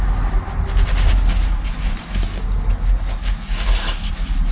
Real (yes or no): yes